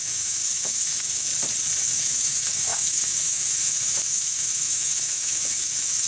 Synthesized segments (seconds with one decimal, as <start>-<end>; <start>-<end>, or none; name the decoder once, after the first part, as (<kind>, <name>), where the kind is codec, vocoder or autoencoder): 0.0-1.3 (autoencoder, DAC-VAE); 1.8-6.1